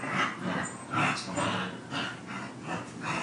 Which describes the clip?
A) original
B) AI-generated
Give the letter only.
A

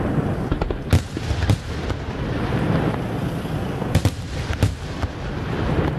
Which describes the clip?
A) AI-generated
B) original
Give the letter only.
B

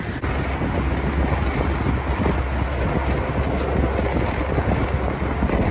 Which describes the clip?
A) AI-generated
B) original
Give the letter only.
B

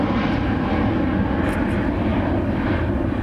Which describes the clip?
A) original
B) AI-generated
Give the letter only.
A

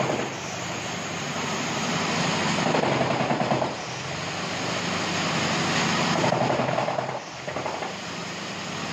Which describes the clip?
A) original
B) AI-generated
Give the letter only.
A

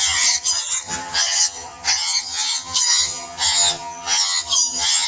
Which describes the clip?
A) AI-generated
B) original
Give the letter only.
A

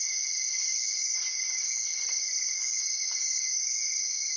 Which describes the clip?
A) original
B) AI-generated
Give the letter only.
A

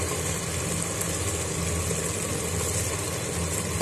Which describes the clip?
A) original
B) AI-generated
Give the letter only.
A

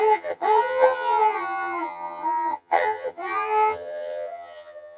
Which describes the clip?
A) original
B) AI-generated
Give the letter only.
B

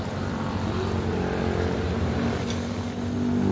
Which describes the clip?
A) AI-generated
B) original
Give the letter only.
B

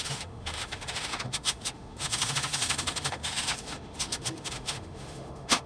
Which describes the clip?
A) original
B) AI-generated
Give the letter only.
B